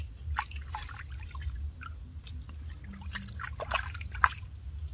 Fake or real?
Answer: real